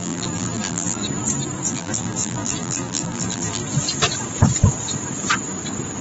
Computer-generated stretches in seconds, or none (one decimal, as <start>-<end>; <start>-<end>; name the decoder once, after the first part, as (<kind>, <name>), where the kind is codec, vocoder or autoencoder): 0.0-1.0 (vocoder, BigVGAN v2); 1.7-3.6